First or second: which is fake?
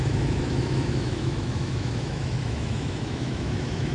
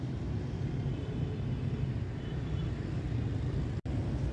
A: first